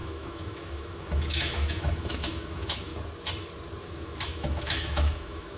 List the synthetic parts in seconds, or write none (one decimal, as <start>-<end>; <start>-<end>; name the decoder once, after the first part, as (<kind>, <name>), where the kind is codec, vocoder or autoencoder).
0.0-2.9 (autoencoder, DAC-VAE); 3.8-5.6